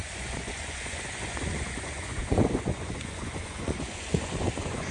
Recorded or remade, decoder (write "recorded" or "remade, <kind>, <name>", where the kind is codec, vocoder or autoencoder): remade, vocoder, Vocos